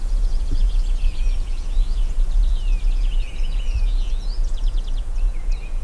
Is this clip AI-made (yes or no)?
yes